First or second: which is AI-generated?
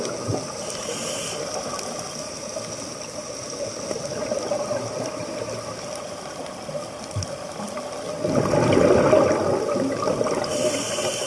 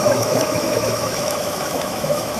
second